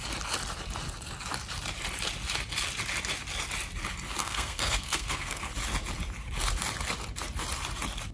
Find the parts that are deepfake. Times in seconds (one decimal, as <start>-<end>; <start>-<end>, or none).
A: 4.2-5.5